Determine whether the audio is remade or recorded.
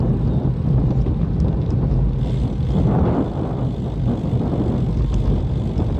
recorded